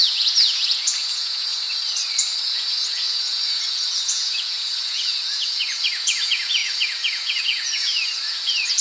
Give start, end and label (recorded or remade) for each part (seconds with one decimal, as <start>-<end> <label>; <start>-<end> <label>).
0.0-1.5 remade; 1.5-2.4 recorded; 2.4-8.8 remade

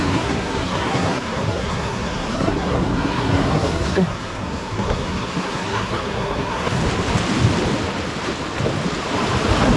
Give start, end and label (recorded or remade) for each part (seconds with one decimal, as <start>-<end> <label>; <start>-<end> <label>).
0.0-6.8 remade; 6.8-9.8 recorded

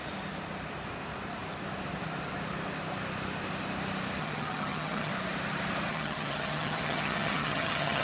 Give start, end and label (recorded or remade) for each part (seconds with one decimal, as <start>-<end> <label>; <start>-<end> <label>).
0.0-4.2 recorded; 4.2-5.1 remade; 5.1-5.9 recorded; 5.9-8.0 remade

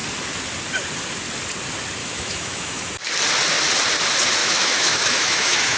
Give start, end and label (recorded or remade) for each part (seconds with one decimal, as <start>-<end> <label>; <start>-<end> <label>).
0.0-2.0 recorded; 2.0-2.9 remade; 2.9-4.4 recorded; 4.4-5.8 remade

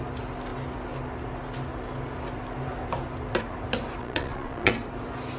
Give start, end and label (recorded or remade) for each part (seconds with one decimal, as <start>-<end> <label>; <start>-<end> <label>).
0.0-4.0 recorded; 4.0-4.7 remade; 4.7-5.4 recorded

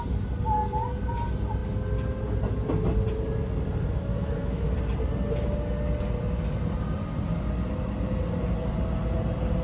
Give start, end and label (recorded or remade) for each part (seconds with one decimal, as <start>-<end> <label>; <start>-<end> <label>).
0.0-4.1 recorded; 4.1-4.8 remade; 4.8-9.6 recorded